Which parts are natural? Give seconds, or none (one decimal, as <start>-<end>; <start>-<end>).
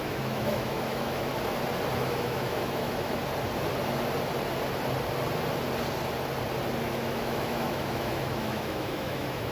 1.3-2.0; 3.2-6.8